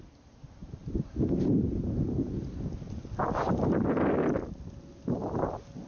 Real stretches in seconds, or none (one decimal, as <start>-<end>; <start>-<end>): 0.0-5.9